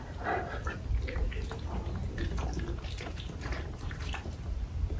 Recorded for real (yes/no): no